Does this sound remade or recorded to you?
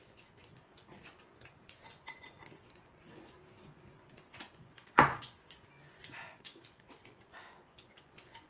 remade